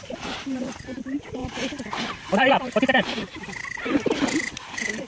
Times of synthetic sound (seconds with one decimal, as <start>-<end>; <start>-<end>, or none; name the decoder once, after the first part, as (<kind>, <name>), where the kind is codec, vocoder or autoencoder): 0.0-3.3 (vocoder, BigVGAN v2); 4.6-5.1